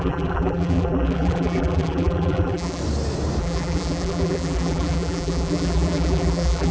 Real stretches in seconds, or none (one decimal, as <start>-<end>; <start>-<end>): 2.8-3.4